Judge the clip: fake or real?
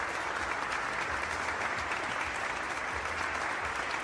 real